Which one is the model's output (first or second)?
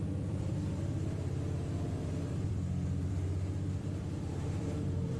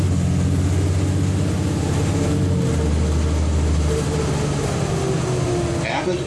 first